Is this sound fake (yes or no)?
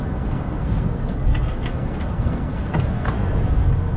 yes